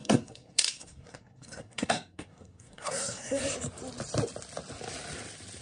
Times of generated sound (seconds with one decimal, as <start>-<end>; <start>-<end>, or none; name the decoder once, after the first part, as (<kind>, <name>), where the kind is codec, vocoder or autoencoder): 0.0-3.4 (codec, SNAC)